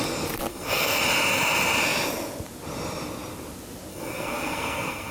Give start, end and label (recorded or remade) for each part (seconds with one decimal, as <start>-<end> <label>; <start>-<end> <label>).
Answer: 0.0-0.5 recorded; 0.5-1.0 remade; 1.0-3.9 recorded; 3.9-5.1 remade